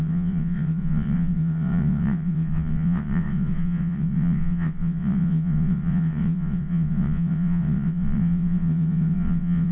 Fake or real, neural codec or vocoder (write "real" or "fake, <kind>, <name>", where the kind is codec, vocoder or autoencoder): fake, vocoder, WaveNeXt